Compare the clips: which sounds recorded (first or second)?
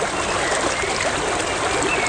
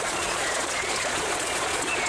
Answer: first